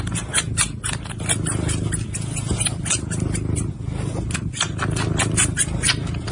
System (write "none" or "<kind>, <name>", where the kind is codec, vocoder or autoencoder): none